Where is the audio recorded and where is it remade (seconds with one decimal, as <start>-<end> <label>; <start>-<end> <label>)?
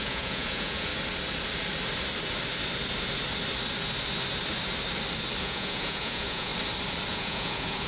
0.0-0.9 remade; 0.9-5.4 recorded; 5.4-6.5 remade; 6.5-7.1 recorded; 7.1-7.9 remade